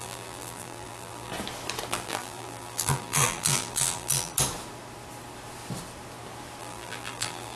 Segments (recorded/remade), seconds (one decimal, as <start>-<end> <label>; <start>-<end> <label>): 0.0-1.3 remade; 1.3-1.9 recorded; 1.9-4.3 remade; 4.3-6.6 recorded; 6.6-7.6 remade